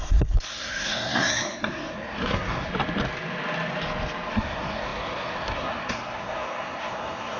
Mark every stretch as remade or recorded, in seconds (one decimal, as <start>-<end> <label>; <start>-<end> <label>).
0.0-2.7 remade; 2.7-4.3 recorded; 4.3-7.4 remade